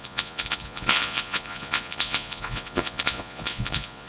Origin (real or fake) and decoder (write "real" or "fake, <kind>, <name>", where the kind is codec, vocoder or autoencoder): fake, vocoder, Vocos